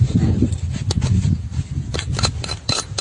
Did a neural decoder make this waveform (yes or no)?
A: no